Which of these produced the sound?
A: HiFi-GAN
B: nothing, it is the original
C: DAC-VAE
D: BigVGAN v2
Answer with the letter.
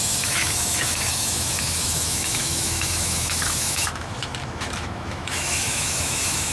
C